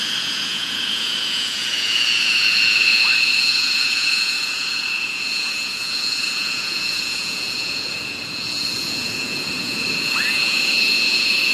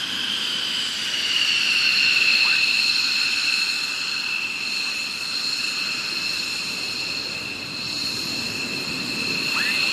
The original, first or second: second